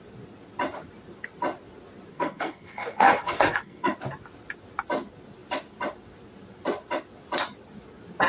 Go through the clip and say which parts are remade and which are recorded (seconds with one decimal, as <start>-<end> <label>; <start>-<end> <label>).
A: 0.0-2.1 recorded; 2.1-3.9 remade; 3.9-8.3 recorded